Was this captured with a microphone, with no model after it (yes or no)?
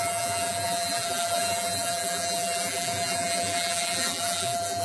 no